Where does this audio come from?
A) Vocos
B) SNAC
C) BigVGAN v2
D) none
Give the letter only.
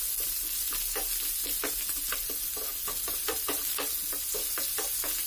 D